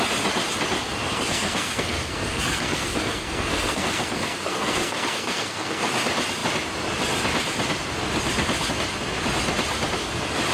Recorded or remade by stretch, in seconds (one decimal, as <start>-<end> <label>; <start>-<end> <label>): 0.0-1.1 recorded; 1.1-5.9 remade; 5.9-10.5 recorded